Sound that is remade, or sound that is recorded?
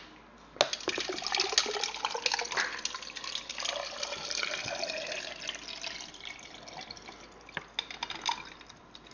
recorded